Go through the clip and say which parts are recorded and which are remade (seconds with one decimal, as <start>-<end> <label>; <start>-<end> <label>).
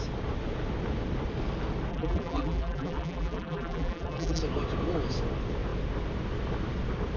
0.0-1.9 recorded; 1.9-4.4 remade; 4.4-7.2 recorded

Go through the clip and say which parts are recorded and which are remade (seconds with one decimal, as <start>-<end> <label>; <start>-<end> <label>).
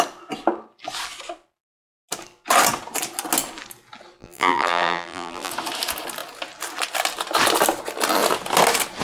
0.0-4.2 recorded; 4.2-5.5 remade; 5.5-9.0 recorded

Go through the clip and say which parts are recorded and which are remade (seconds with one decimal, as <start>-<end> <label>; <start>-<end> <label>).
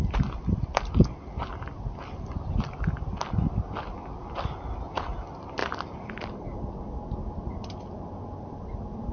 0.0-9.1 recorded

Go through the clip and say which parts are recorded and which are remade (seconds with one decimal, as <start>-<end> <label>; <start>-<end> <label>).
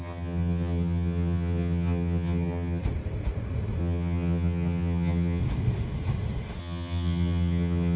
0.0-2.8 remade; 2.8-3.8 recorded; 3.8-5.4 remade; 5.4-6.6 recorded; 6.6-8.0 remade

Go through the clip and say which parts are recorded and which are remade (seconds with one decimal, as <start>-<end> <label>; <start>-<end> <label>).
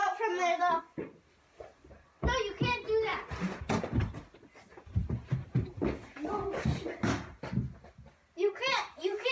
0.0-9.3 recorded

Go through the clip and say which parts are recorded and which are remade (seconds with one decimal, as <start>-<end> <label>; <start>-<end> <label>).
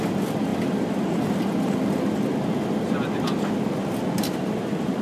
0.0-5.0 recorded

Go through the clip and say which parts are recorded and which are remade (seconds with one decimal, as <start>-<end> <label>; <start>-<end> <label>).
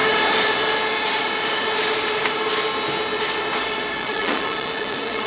0.0-4.0 recorded; 4.0-5.3 remade